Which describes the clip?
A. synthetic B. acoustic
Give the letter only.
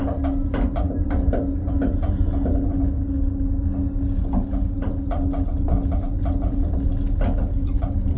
B